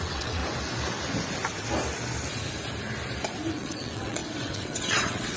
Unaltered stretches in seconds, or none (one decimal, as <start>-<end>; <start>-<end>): 0.4-3.5